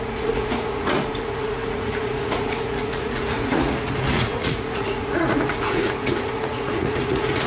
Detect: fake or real fake